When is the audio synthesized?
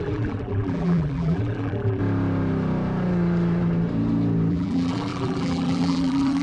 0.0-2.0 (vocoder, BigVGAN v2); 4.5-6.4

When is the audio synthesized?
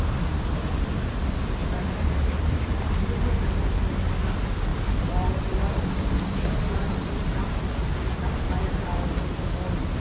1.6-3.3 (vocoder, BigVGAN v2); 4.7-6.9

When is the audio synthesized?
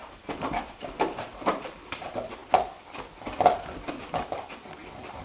0.0-2.0 (vocoder, BigVGAN v2)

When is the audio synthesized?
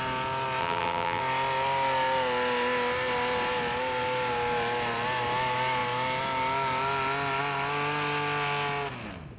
0.6-1.2 (vocoder, BigVGAN v2)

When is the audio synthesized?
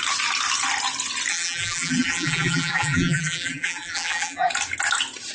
1.3-4.5 (vocoder, BigVGAN v2)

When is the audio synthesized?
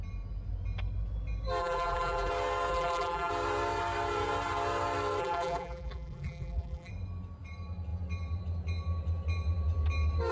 1.6-2.3 (vocoder, BigVGAN v2); 2.7-3.3; 5.2-6.9